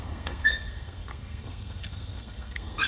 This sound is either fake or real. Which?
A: fake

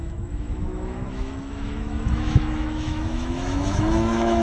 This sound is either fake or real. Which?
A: fake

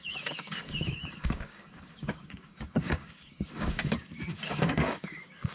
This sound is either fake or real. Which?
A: fake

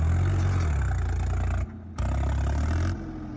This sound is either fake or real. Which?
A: real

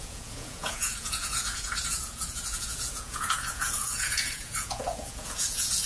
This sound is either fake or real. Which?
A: fake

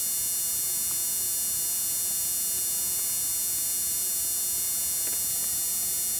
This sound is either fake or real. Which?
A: real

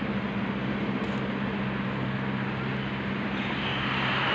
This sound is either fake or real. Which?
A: real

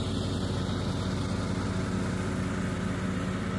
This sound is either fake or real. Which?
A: real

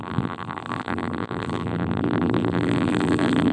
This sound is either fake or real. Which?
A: fake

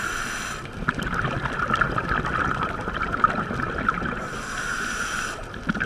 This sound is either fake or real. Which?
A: real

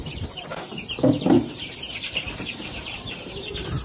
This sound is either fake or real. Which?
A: fake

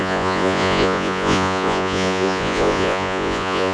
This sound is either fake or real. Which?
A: fake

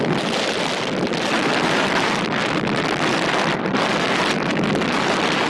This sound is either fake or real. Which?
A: real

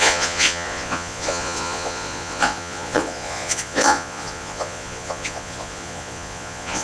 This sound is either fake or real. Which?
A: fake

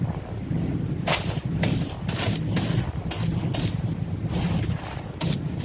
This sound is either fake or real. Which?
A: real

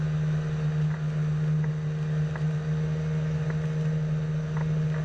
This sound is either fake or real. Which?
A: real